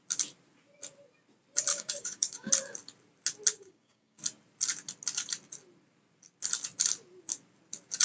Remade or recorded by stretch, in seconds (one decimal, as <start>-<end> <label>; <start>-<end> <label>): 0.0-1.7 recorded; 1.7-2.5 remade; 2.5-3.5 recorded; 3.5-4.2 remade; 4.2-8.0 recorded